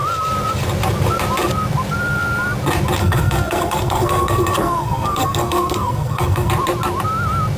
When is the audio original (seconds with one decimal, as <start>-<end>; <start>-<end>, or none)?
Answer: 0.0-3.0; 6.5-7.6